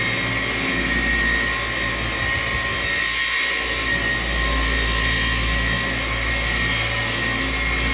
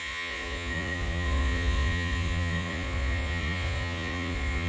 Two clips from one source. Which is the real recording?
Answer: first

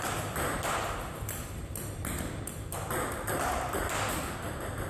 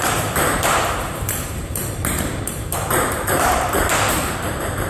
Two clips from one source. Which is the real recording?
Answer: first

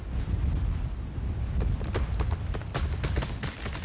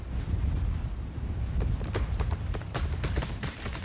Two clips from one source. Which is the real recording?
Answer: first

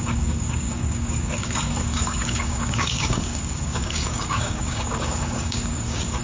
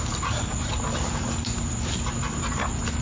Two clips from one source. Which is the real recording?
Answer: second